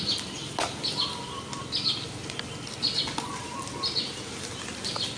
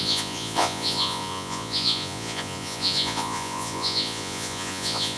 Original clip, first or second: first